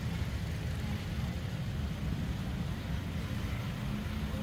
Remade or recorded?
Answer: recorded